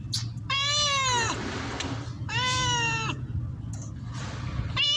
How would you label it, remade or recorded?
recorded